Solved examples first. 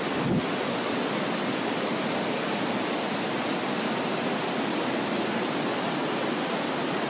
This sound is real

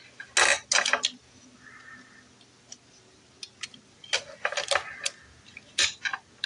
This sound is real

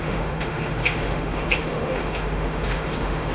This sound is fake